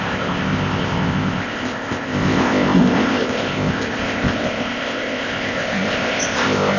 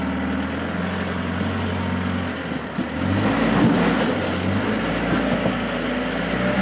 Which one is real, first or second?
second